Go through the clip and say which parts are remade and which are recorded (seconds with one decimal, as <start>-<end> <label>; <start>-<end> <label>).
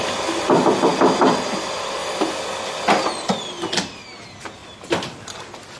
0.0-2.0 remade; 2.0-4.0 recorded; 4.0-4.6 remade; 4.6-5.8 recorded